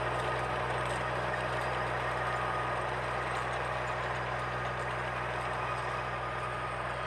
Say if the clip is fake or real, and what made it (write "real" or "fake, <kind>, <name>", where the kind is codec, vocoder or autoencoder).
real